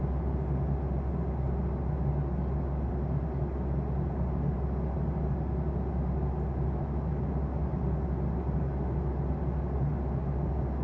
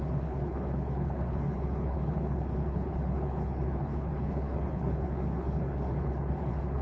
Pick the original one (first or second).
first